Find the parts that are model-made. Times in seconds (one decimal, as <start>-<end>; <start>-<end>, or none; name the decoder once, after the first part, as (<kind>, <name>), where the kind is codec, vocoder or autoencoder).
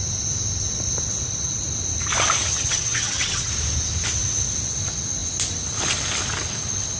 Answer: 2.5-3.5 (vocoder, HiFi-GAN)